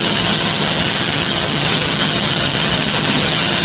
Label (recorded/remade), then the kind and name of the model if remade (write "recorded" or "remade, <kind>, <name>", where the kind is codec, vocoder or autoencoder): remade, vocoder, HiFi-GAN